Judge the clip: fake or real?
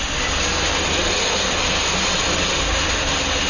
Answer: real